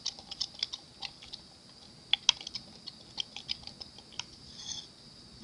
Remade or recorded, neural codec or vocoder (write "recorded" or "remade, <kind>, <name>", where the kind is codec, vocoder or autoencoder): recorded